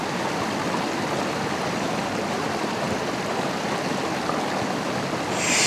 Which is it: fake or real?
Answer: real